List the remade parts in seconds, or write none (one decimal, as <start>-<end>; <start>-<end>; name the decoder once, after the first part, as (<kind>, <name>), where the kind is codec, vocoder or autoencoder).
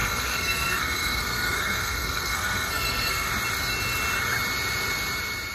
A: 0.0-3.3 (codec, SNAC)